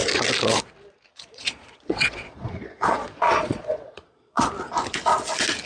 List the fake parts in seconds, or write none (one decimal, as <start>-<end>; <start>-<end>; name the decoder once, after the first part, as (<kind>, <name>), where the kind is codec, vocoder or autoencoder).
1.1-4.5 (vocoder, Vocos)